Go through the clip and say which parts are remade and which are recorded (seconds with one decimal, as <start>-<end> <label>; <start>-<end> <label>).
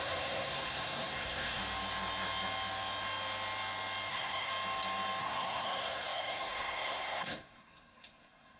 0.0-1.6 remade; 1.6-4.1 recorded; 4.1-4.5 remade; 4.5-5.2 recorded; 5.2-8.6 remade